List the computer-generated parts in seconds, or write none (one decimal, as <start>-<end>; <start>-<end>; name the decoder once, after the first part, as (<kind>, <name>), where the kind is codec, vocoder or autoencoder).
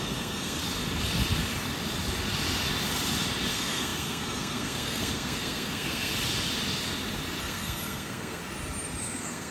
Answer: 0.0-0.6 (codec, SNAC); 3.5-6.1; 7.4-8.4; 9.0-9.5